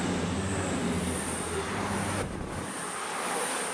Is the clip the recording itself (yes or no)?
yes